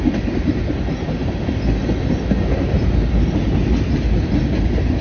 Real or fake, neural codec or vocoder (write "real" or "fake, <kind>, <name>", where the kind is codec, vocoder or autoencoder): real